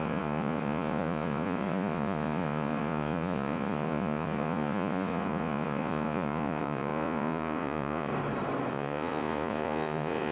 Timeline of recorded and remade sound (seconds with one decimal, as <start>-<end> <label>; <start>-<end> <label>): 0.0-8.1 remade; 8.1-8.7 recorded; 8.7-10.3 remade

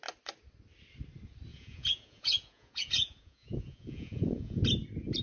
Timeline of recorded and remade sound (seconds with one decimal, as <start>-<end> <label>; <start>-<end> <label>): 0.0-1.5 recorded; 1.5-4.6 remade; 4.6-5.2 recorded

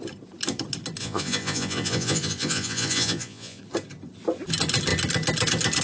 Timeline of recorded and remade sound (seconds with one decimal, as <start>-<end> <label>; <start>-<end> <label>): 0.0-1.0 recorded; 1.0-3.6 remade; 3.6-5.8 recorded

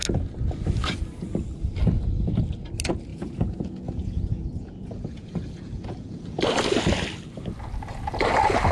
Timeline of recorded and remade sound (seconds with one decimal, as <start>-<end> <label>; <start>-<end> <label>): 0.0-3.1 recorded; 3.1-6.4 remade; 6.4-8.7 recorded